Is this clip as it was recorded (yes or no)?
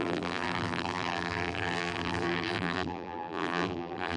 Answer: no